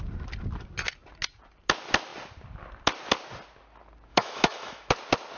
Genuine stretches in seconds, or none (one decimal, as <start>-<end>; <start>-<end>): 0.0-4.1; 4.9-5.4